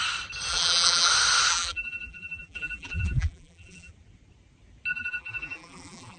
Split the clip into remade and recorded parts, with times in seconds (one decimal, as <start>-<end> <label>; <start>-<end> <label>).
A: 0.0-0.5 recorded; 0.5-1.1 remade; 1.1-1.5 recorded; 1.5-3.9 remade; 3.9-4.9 recorded; 4.9-6.2 remade